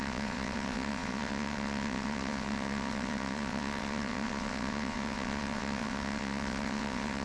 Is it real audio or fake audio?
fake